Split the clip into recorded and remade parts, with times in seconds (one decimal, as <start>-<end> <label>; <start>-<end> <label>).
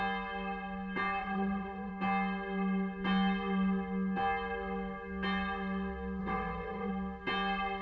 0.0-1.2 recorded; 1.2-1.9 remade; 1.9-6.2 recorded; 6.2-6.9 remade; 6.9-7.8 recorded